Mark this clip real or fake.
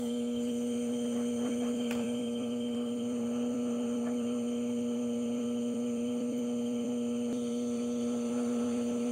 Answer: fake